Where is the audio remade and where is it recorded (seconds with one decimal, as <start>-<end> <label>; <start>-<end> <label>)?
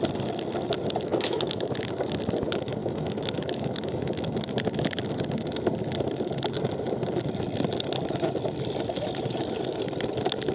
0.0-1.1 recorded; 1.1-1.8 remade; 1.8-2.8 recorded; 2.8-4.5 remade; 4.5-10.5 recorded